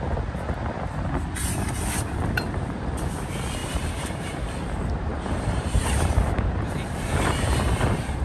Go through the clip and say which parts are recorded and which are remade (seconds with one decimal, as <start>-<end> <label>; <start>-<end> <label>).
0.0-3.6 recorded; 3.6-4.4 remade; 4.4-5.1 recorded; 5.1-8.2 remade